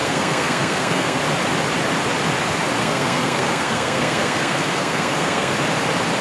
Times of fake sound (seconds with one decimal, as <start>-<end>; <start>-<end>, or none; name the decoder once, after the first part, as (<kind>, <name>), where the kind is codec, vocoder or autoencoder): 0.0-1.2 (codec, SNAC); 2.8-5.5